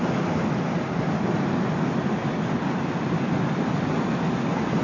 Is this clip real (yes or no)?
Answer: yes